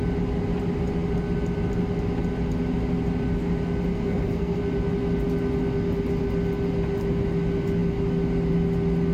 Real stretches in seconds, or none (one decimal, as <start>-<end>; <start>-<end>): 0.0-3.9; 4.6-9.1